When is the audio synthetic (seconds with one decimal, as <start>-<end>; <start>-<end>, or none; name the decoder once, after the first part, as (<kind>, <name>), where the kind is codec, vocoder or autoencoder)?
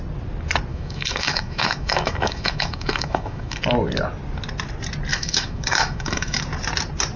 0.7-3.6 (autoencoder, DAC-VAE); 5.1-6.4